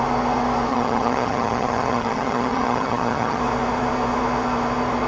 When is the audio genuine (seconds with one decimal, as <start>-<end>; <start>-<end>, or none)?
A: 0.0-0.7; 3.4-5.1